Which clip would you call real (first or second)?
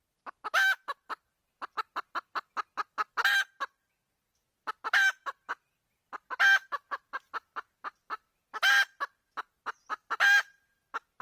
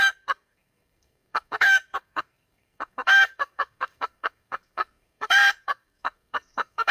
first